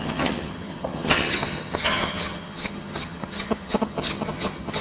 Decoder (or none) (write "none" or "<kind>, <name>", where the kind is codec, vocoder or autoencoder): vocoder, HiFi-GAN